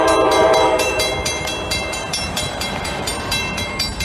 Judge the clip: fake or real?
fake